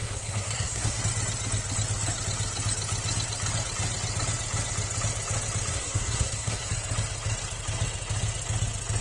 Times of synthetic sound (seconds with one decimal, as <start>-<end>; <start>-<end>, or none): 0.0-1.0; 5.7-6.7